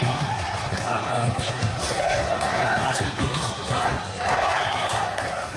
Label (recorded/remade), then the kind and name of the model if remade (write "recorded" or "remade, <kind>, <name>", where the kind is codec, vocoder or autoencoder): remade, codec, SNAC